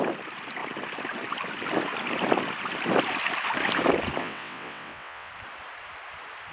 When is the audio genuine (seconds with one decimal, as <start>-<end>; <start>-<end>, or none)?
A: 0.0-4.2; 5.3-6.5